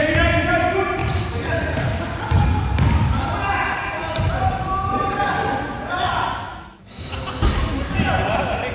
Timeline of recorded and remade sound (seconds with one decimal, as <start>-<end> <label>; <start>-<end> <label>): 0.0-6.5 recorded; 6.5-7.1 remade; 7.1-8.7 recorded